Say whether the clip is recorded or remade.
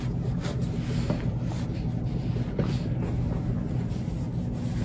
recorded